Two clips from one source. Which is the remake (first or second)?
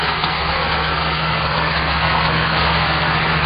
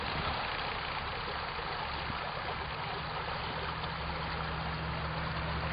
first